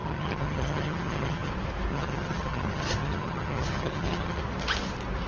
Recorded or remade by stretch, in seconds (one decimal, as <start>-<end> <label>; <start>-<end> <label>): 0.0-1.5 remade; 1.5-1.9 recorded; 1.9-4.4 remade; 4.4-5.3 recorded